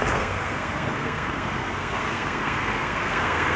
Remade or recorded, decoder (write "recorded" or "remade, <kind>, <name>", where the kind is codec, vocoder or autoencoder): remade, codec, SNAC